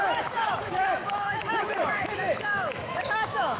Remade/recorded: remade